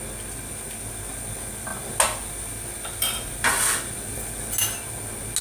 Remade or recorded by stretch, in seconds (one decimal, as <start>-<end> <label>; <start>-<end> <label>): 0.0-5.4 recorded